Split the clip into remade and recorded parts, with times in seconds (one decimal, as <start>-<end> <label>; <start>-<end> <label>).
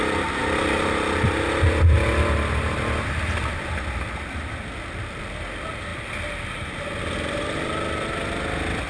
0.0-8.9 recorded